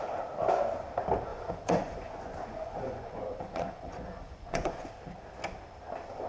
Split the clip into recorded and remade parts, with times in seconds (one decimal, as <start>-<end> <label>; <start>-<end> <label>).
0.0-1.3 recorded; 1.3-4.9 remade; 4.9-6.3 recorded